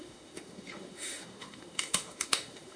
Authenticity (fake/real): fake